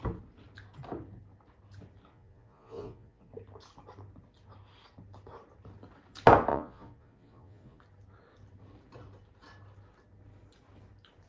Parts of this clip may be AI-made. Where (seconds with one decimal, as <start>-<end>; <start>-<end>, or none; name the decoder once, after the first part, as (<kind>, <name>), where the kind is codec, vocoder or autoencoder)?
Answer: 2.1-3.3 (vocoder, Vocos); 6.5-7.8